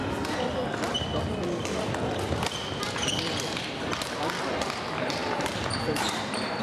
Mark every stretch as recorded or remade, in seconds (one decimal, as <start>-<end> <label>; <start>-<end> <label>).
0.0-5.2 recorded; 5.2-6.6 remade